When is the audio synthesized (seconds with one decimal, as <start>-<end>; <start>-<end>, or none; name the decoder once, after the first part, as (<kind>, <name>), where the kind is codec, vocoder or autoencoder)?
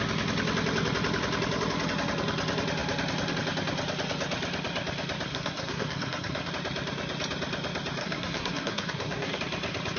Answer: 5.3-6.5 (codec, SNAC); 8.0-9.4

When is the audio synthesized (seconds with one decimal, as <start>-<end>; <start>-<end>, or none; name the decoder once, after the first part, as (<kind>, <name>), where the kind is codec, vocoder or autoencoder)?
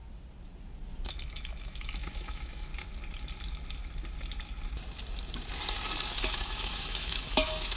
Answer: 1.1-2.7 (autoencoder, DAC-VAE); 6.1-7.8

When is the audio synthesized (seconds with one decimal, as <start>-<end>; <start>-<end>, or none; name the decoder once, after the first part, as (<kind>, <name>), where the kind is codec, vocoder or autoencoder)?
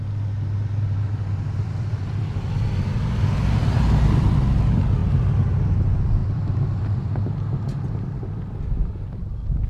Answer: 6.2-7.3 (vocoder, BigVGAN v2)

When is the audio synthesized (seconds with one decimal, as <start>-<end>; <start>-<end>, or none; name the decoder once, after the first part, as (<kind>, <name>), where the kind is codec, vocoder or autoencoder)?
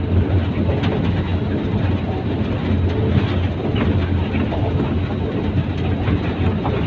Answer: none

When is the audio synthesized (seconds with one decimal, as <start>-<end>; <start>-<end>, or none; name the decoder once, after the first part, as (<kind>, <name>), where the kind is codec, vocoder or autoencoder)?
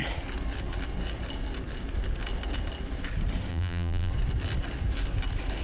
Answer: 3.5-4.1 (vocoder, BigVGAN v2)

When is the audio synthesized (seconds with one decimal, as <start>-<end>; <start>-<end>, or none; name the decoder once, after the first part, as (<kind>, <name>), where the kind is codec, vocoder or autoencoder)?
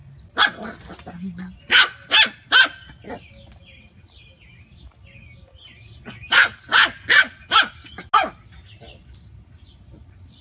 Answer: none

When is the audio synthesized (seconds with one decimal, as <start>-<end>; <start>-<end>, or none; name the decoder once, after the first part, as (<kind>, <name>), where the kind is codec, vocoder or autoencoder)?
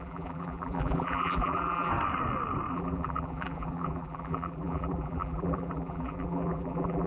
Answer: 0.0-1.9 (vocoder, BigVGAN v2); 2.7-7.1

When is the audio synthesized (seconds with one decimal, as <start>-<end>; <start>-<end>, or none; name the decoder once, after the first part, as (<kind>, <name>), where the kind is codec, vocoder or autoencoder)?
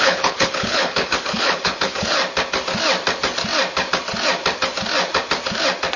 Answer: 0.0-2.2 (codec, HILCodec)